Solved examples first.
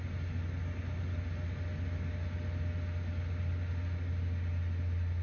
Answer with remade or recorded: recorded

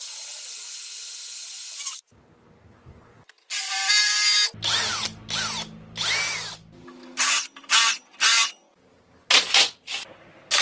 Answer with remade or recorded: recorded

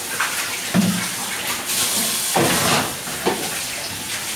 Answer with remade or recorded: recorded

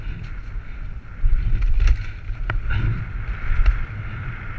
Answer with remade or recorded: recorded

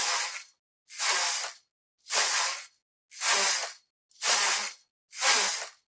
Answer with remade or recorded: recorded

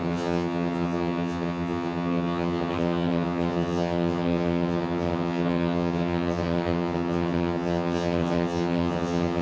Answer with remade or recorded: remade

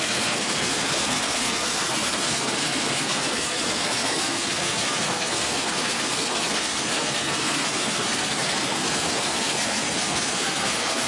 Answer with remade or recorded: remade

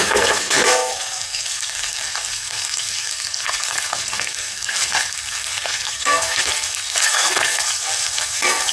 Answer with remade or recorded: remade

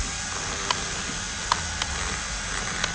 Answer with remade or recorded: recorded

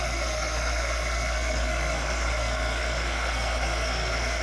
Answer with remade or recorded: remade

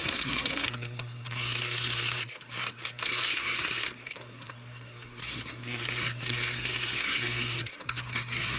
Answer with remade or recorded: remade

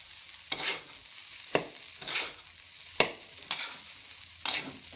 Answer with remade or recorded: recorded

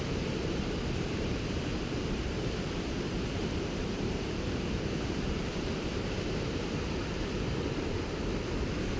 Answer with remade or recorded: remade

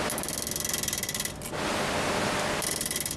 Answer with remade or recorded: recorded